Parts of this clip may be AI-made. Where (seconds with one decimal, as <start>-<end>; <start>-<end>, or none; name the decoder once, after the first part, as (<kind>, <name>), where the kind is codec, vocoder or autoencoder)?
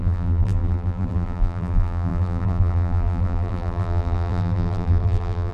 0.0-5.5 (vocoder, BigVGAN v2)